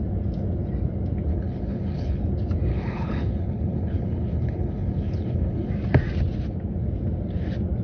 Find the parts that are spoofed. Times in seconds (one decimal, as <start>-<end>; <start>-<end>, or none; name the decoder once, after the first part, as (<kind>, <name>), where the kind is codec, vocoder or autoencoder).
1.3-2.2 (codec, HILCodec); 2.7-5.7